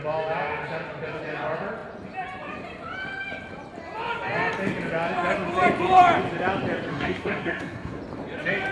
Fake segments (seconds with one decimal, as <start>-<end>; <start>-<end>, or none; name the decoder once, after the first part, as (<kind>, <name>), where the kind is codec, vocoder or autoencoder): 6.9-8.0 (codec, SNAC)